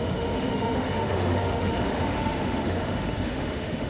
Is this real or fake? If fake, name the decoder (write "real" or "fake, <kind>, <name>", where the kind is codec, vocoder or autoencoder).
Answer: fake, autoencoder, DAC-VAE